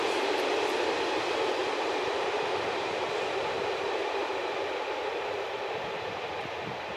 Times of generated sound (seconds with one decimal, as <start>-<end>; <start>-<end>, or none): 1.6-3.4; 4.2-6.3